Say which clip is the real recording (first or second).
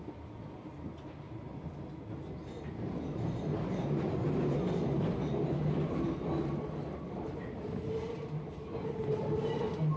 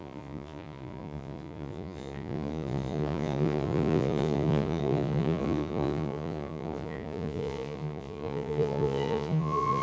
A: first